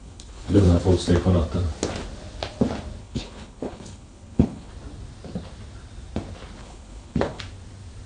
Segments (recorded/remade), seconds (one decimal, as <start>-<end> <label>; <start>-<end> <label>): 0.0-0.8 remade; 0.8-3.0 recorded; 3.0-4.7 remade; 4.7-6.6 recorded; 6.6-7.4 remade; 7.4-8.1 recorded